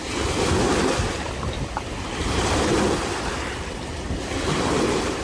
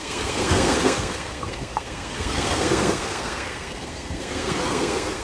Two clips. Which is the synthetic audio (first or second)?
second